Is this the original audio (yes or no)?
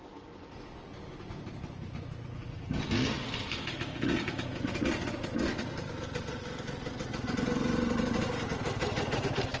yes